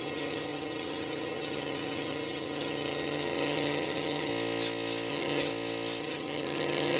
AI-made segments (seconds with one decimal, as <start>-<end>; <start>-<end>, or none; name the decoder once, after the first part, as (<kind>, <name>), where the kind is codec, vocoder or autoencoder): 0.0-4.3 (vocoder, HiFi-GAN); 5.1-5.5; 6.0-7.0

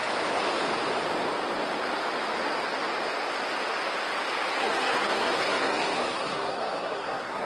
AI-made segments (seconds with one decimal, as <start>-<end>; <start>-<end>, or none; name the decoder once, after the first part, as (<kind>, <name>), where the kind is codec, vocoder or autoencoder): 4.5-7.5 (codec, SNAC)

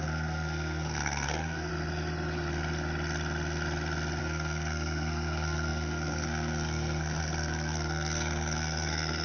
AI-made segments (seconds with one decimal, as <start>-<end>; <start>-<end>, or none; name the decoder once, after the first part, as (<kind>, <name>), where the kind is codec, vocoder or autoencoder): 0.0-1.7 (codec, SNAC); 4.2-9.2

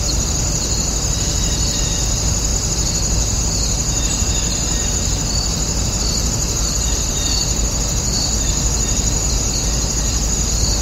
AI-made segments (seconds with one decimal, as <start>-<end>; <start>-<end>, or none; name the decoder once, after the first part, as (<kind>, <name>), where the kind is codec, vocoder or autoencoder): 0.0-10.8 (vocoder, BigVGAN v2)

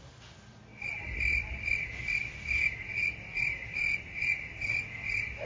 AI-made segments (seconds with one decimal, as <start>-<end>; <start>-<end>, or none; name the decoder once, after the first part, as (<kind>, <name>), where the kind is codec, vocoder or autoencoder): none

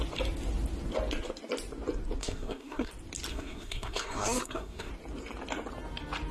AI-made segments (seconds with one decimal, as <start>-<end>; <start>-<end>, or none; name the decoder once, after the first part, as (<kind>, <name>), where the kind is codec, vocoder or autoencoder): 2.2-2.9 (codec, SNAC); 3.3-4.9

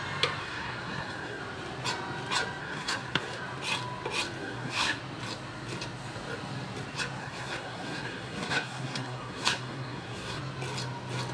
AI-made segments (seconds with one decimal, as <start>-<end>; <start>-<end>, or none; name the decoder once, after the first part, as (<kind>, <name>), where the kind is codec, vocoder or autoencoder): 0.4-1.4 (codec, SNAC); 2.6-3.4; 4.4-5.0; 7.2-10.4